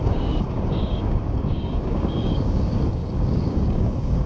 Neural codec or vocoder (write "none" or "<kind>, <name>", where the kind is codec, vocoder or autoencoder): codec, DAC